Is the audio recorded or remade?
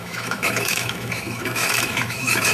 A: remade